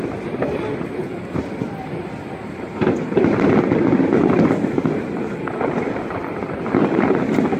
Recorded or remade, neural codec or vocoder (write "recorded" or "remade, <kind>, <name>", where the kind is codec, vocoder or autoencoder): recorded